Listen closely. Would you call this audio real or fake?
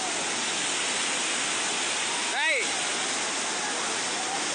real